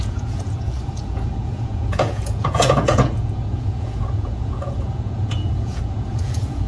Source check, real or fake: fake